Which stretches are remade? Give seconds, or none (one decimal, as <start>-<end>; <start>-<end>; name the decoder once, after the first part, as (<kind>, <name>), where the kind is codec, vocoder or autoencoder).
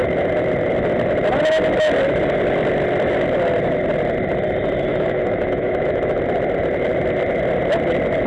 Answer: 4.9-6.2 (autoencoder, DAC-VAE)